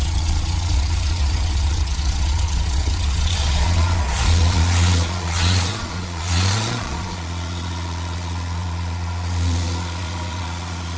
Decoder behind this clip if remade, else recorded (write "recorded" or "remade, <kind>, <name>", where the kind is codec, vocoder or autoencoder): remade, vocoder, Vocos